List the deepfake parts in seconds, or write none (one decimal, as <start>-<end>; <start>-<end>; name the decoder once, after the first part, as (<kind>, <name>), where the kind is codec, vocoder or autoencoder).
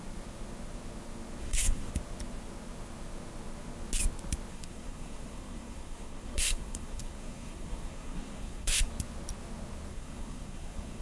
1.4-1.9 (codec, SNAC); 4.5-8.9; 9.9-11.0